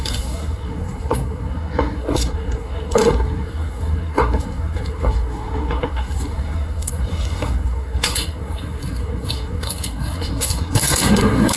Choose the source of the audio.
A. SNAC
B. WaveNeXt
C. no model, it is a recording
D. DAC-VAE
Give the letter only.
A